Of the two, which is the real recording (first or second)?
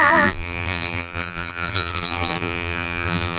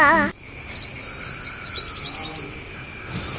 second